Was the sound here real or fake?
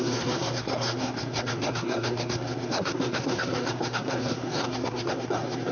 fake